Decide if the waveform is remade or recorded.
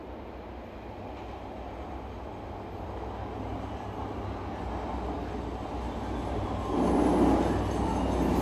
recorded